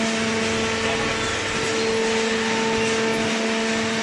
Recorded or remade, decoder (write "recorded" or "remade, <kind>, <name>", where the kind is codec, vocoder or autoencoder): recorded